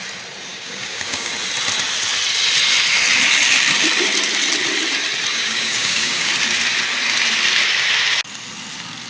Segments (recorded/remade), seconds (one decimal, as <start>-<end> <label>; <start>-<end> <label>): 0.0-0.5 recorded; 0.5-1.3 remade; 1.3-5.3 recorded; 5.3-6.3 remade; 6.3-9.1 recorded